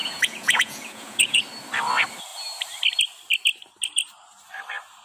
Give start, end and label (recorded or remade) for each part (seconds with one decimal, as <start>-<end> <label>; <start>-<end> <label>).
0.0-1.4 remade; 1.4-5.0 recorded